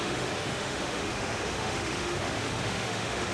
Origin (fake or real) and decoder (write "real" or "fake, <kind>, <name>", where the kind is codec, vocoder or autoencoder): fake, autoencoder, DAC-VAE